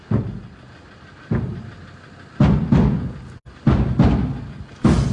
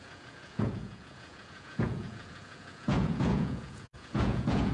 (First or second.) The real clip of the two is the first